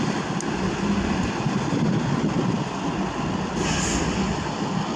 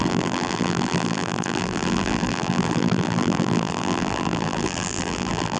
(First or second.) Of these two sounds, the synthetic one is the second